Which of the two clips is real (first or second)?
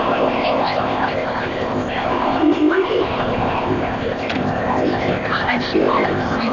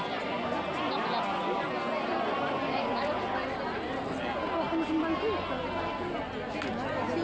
second